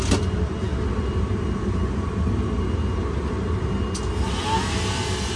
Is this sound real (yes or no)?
yes